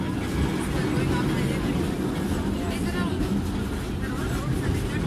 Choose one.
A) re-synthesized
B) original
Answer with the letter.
B